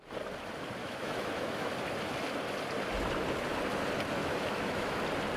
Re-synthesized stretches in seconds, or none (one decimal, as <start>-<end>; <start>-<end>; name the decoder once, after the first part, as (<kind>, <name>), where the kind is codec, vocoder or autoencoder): 0.8-1.7 (autoencoder, DAC-VAE); 4.2-5.0